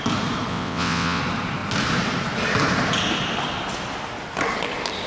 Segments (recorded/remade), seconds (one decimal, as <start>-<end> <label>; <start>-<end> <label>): 0.0-0.5 recorded; 0.5-1.2 remade; 1.2-5.1 recorded